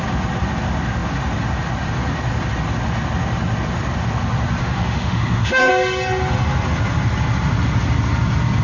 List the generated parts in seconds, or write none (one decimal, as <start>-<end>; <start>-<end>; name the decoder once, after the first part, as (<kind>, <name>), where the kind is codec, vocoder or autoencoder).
4.6-5.7 (autoencoder, DAC-VAE)